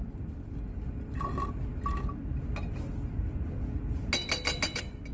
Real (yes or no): yes